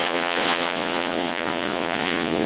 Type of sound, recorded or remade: remade